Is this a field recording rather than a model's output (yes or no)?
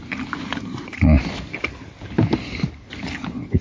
yes